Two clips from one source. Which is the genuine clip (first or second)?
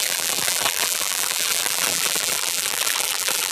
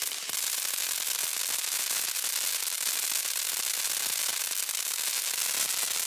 second